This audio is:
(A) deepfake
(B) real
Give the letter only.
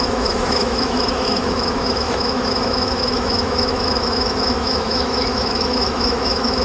A